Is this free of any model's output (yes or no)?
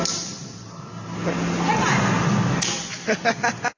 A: yes